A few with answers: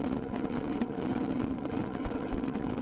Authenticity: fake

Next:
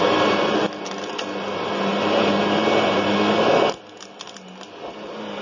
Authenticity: real